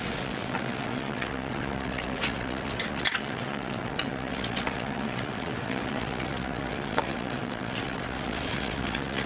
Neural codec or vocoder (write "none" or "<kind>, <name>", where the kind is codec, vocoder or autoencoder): vocoder, WaveNeXt